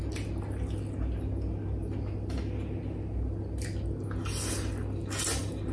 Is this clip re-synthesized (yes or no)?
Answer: no